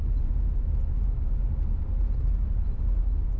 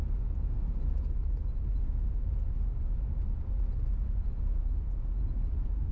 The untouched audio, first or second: first